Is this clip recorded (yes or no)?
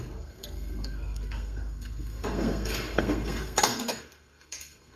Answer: no